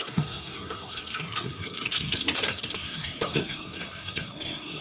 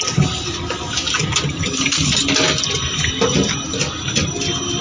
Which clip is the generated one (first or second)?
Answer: first